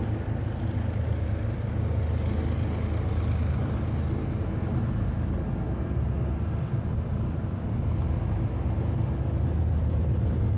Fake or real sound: real